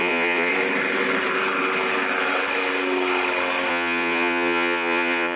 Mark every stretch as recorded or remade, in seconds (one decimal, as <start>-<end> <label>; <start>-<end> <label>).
0.0-0.5 remade; 0.5-3.7 recorded; 3.7-5.4 remade